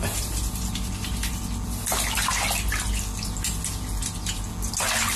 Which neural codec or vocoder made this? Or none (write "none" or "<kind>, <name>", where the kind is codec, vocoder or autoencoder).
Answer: none